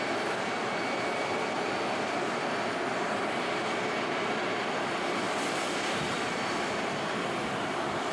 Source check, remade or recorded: remade